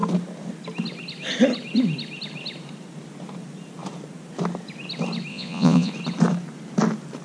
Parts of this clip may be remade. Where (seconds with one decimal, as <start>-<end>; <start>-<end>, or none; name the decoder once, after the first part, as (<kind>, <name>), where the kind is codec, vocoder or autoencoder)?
5.3-5.9 (vocoder, Vocos)

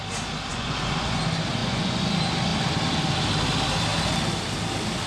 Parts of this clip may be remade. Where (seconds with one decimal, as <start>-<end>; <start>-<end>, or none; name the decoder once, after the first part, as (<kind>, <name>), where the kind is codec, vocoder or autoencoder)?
0.5-1.2 (vocoder, Vocos); 1.6-2.1

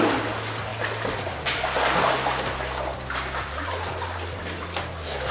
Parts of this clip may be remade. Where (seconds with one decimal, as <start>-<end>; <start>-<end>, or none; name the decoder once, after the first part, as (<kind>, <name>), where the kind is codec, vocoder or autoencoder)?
none